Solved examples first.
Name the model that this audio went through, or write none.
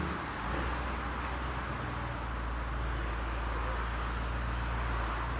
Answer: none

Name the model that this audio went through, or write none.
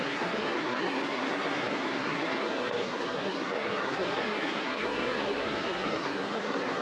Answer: codec, SNAC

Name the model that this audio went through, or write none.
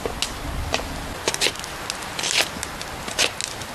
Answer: none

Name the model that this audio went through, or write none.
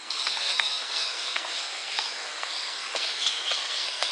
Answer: codec, SNAC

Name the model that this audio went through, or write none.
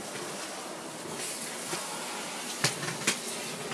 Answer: none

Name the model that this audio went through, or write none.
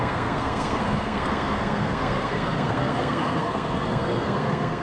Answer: codec, SNAC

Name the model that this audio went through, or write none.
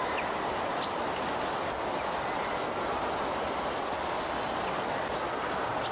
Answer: none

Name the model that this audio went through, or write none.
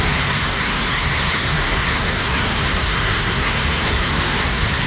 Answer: codec, SNAC